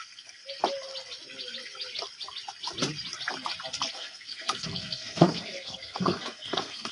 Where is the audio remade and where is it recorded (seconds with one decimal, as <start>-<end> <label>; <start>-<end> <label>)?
0.0-0.4 remade; 0.4-3.9 recorded; 3.9-6.9 remade